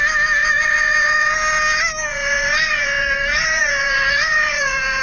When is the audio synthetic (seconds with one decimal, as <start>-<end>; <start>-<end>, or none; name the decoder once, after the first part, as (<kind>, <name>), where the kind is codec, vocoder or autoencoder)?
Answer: 0.4-1.3 (vocoder, Vocos); 2.1-5.0

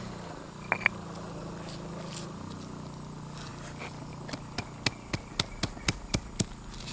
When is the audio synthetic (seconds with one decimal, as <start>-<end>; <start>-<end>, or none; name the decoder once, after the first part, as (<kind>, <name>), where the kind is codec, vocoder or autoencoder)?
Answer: none

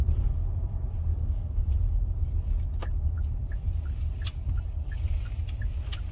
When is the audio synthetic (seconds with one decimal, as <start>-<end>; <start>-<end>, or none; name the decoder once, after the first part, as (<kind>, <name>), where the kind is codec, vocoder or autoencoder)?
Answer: 1.1-1.6 (codec, DAC)

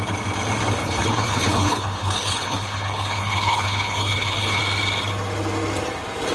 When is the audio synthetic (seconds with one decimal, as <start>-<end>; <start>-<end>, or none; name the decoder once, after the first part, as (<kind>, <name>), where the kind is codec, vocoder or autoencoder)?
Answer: 0.8-4.6 (codec, HILCodec)

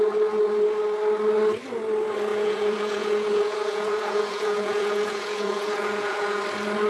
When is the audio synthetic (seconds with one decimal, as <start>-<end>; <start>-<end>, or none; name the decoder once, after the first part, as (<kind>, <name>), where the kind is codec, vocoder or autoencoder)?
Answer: 2.3-6.4 (vocoder, Vocos)

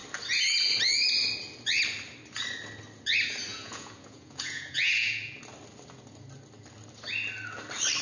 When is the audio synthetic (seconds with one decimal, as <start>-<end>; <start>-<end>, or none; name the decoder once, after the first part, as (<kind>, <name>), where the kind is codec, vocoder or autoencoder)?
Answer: 3.5-5.4 (vocoder, Vocos)

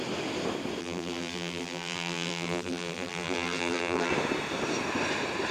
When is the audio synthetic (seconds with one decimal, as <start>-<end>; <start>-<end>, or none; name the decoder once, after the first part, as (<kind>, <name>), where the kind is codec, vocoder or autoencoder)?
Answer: 0.8-4.1 (vocoder, BigVGAN v2)

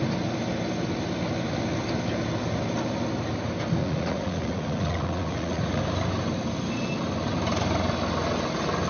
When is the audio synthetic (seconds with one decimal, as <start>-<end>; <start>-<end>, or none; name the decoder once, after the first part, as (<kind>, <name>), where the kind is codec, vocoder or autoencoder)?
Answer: 3.8-5.8 (vocoder, Vocos)